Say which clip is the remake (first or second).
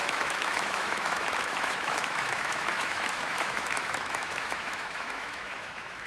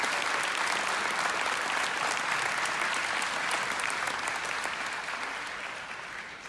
first